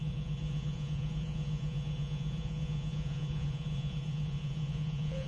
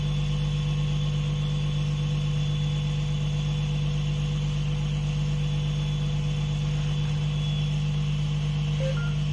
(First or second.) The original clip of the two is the second